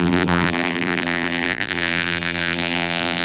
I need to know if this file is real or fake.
fake